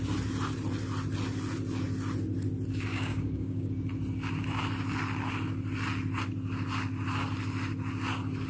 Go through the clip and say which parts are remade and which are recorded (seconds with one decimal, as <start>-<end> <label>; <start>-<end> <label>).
0.0-2.9 recorded; 2.9-3.7 remade; 3.7-8.5 recorded